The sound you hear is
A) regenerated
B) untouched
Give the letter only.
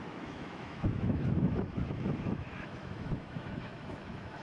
A